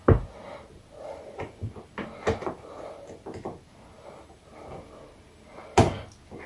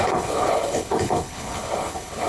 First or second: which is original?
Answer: first